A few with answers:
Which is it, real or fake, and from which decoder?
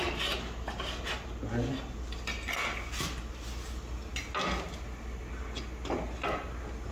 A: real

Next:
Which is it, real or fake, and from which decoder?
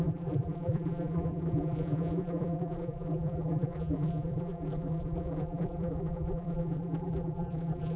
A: fake, vocoder, BigVGAN v2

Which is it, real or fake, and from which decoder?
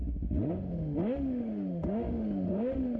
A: fake, autoencoder, DAC-VAE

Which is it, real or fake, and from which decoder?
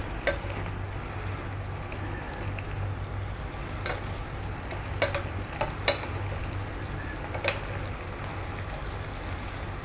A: real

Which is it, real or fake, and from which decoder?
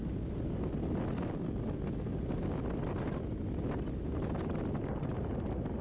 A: real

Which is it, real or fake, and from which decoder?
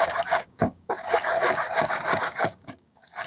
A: fake, codec, DAC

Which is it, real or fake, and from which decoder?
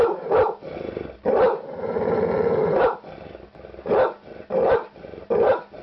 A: real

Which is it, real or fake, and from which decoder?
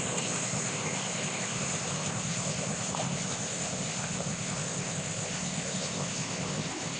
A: fake, codec, ZipCodec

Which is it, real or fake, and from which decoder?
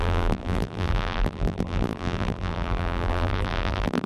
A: fake, vocoder, BigVGAN v2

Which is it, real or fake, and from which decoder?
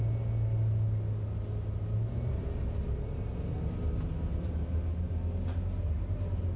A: real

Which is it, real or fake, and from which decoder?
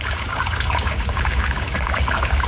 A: fake, codec, DAC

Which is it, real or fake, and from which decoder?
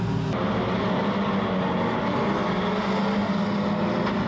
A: real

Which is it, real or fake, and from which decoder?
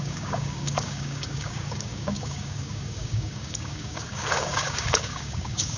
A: fake, codec, DAC